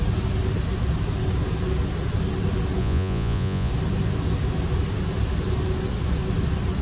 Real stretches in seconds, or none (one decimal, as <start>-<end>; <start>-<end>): 0.0-2.8; 3.7-6.8